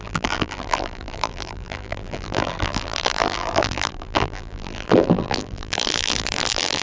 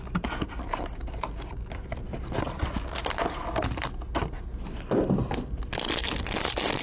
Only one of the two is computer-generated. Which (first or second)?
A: first